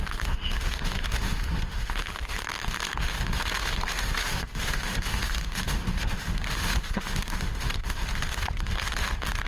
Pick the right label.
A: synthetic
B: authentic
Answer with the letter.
A